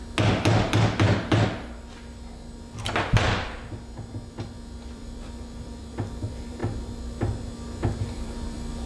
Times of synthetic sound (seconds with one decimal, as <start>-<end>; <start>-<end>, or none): 4.9-6.6; 8.0-8.9